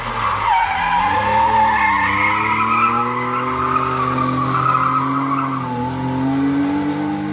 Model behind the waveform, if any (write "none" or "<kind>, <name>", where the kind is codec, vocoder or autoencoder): none